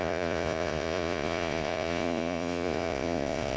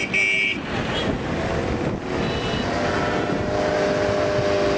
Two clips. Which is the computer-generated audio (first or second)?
first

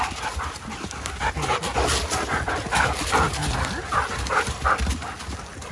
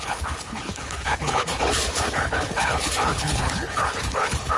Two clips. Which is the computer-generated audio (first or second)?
second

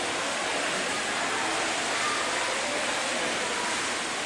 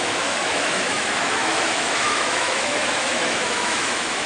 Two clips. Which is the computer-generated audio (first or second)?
second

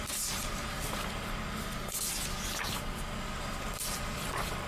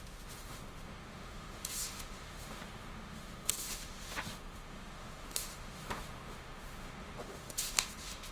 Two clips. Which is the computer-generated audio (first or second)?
second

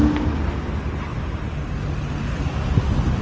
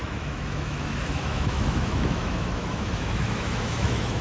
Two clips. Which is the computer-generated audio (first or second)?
second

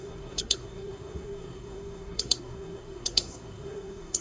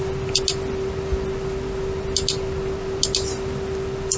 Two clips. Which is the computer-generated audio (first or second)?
first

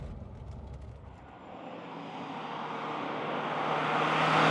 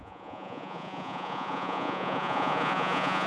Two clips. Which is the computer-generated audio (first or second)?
second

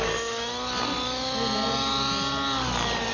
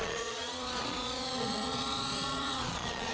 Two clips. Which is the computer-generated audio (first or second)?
second